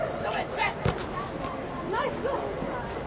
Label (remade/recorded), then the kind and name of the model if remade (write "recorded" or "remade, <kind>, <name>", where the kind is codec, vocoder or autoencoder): recorded